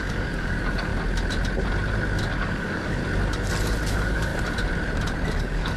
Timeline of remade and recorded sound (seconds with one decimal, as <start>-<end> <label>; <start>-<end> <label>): 0.0-0.9 remade; 0.9-2.3 recorded; 2.3-3.0 remade; 3.0-3.9 recorded; 3.9-4.3 remade; 4.3-5.3 recorded; 5.3-5.8 remade